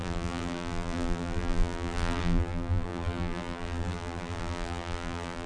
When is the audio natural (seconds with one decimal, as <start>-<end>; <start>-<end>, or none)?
none